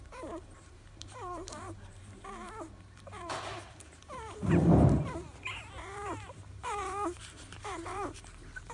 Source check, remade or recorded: remade